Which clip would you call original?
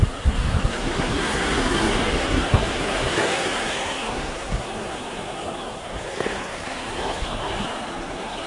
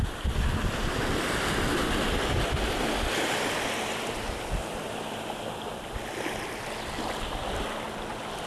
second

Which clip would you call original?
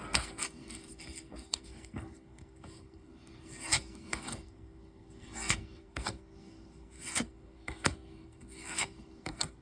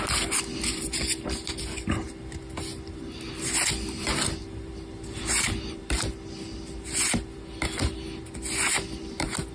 second